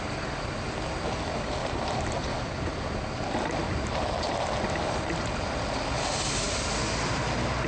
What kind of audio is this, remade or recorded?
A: recorded